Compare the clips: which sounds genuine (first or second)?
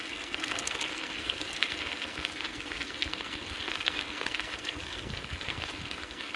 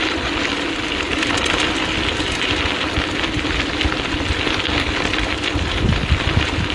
second